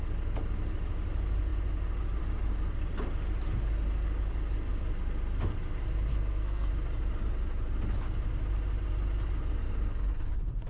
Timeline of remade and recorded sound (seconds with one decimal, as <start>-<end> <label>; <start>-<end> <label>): 0.0-6.1 recorded; 6.1-6.7 remade; 6.7-10.7 recorded